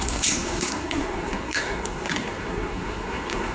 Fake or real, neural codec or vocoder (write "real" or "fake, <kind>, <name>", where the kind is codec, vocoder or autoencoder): fake, codec, SNAC